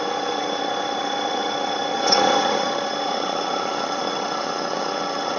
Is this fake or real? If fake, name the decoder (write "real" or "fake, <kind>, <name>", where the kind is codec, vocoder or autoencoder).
fake, vocoder, HiFi-GAN